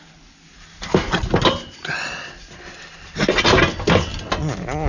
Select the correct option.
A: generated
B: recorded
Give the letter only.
B